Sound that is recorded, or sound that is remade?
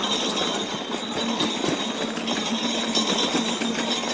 recorded